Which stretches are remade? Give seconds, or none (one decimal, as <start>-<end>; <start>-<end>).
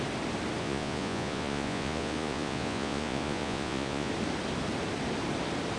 0.6-4.1